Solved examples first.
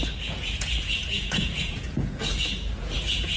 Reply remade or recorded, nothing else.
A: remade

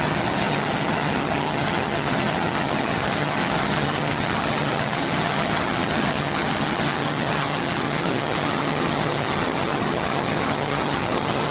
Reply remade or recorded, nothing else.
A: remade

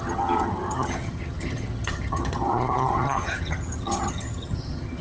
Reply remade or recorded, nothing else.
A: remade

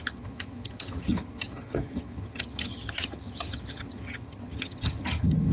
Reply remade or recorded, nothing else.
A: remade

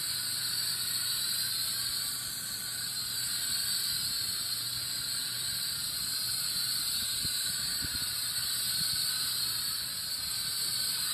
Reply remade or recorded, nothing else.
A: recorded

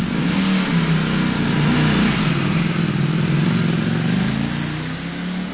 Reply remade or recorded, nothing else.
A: recorded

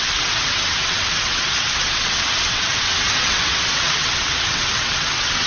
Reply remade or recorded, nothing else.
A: remade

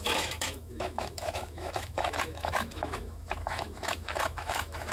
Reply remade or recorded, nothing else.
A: remade